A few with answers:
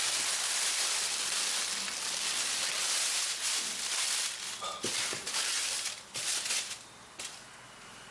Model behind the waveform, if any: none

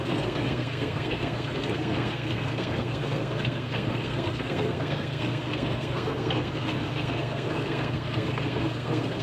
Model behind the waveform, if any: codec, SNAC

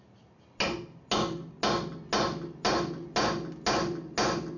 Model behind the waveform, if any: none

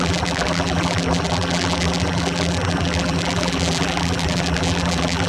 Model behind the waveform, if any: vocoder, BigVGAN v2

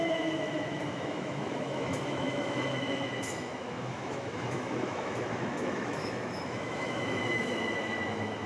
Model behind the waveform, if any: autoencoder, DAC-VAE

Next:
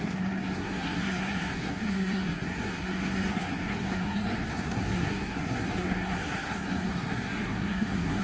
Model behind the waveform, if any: codec, SNAC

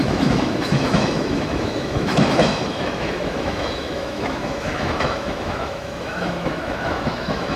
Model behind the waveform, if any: autoencoder, DAC-VAE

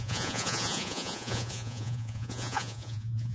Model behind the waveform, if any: vocoder, Vocos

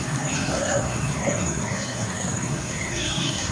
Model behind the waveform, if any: codec, SNAC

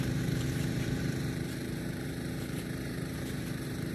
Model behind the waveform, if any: vocoder, BigVGAN v2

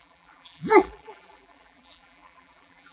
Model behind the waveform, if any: vocoder, BigVGAN v2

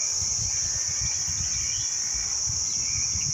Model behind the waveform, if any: none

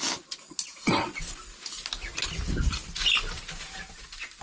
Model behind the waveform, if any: none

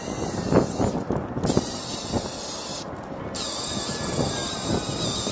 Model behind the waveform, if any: none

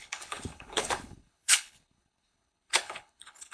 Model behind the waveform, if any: codec, HILCodec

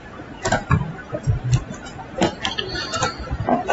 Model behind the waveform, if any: vocoder, BigVGAN v2